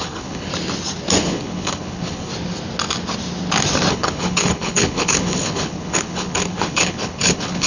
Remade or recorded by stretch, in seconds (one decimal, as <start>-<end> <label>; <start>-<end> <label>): 0.0-0.5 remade; 0.5-1.2 recorded; 1.2-2.3 remade; 2.3-3.9 recorded; 3.9-7.7 remade